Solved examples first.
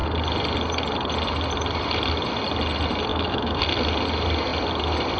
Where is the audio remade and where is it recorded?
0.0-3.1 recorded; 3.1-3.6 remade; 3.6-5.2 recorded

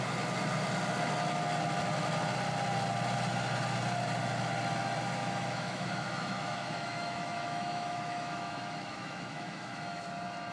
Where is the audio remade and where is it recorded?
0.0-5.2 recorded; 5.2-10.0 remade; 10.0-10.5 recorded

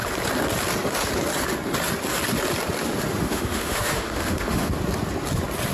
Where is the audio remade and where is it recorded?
0.0-3.2 recorded; 3.2-4.7 remade; 4.7-5.7 recorded